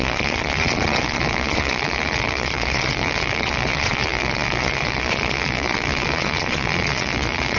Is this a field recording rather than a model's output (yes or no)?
no